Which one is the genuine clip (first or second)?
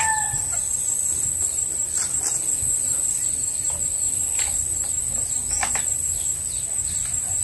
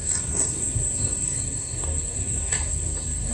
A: first